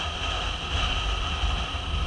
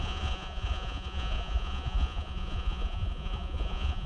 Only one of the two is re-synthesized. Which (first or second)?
second